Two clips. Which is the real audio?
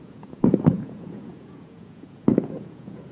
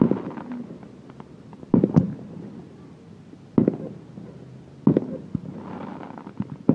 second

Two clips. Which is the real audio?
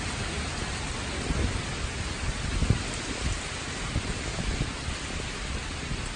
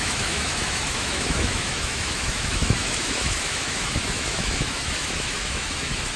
first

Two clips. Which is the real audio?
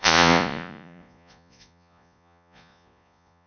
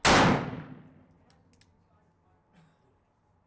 second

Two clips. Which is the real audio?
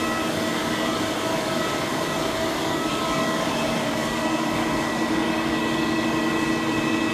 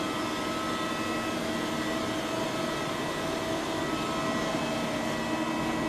second